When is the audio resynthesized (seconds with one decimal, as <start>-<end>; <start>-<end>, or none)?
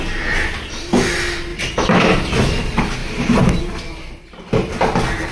1.5-2.0; 3.0-3.6